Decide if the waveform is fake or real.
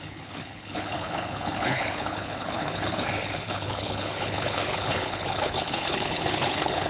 fake